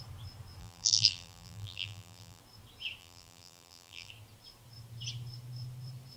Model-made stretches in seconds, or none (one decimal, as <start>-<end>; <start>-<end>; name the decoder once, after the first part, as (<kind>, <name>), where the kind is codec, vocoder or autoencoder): 0.6-2.4 (vocoder, BigVGAN v2); 3.0-4.1